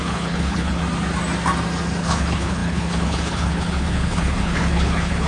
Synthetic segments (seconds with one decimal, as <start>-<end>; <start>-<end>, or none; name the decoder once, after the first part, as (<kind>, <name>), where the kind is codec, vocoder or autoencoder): 0.0-0.8 (codec, HILCodec); 2.0-5.3